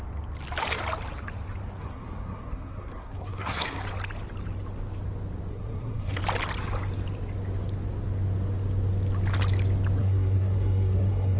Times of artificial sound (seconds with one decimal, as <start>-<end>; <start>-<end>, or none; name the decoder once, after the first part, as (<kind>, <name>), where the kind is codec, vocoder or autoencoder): 1.8-3.8 (codec, SNAC); 5.5-6.2; 10.0-11.4